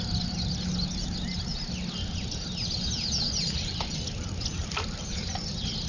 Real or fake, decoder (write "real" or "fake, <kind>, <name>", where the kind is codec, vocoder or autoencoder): real